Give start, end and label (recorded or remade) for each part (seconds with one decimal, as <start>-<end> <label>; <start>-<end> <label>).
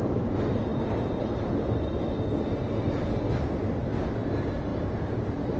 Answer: 0.0-5.6 recorded